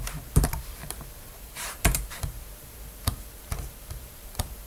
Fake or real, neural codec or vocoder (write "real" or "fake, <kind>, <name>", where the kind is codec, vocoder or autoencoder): fake, vocoder, BigVGAN v2